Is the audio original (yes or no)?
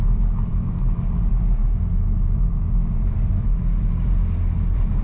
yes